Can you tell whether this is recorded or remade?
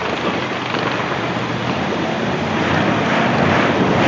remade